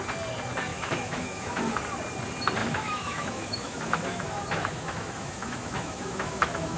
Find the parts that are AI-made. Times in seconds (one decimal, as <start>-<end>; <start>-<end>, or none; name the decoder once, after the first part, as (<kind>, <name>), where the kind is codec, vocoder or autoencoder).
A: 0.7-1.6 (autoencoder, DAC-VAE); 2.6-6.8